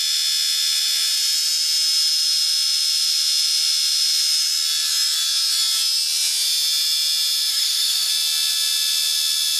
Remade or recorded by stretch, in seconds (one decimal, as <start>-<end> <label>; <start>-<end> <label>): 0.0-7.5 recorded; 7.5-8.1 remade; 8.1-9.6 recorded